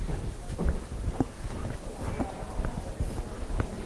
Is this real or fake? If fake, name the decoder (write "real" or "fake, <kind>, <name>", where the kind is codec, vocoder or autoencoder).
real